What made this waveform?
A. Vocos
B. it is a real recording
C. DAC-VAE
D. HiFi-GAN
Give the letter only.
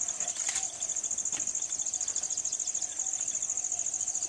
B